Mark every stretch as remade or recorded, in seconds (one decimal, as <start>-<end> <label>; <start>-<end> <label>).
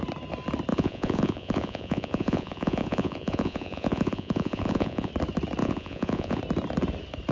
0.0-0.7 recorded; 0.7-5.1 remade; 5.1-5.6 recorded; 5.6-6.4 remade; 6.4-7.3 recorded